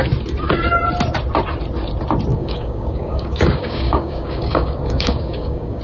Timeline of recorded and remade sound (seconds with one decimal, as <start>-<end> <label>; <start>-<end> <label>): 0.0-2.3 recorded; 2.3-5.8 remade